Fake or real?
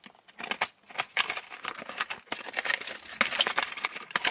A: real